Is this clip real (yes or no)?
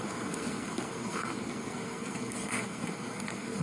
no